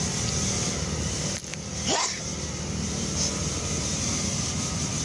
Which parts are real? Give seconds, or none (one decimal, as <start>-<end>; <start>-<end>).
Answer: 0.0-1.5; 2.2-3.4